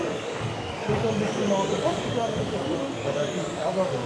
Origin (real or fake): fake